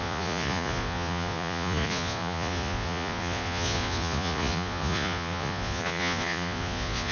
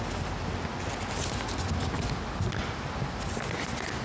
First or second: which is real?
second